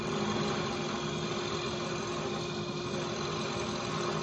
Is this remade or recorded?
recorded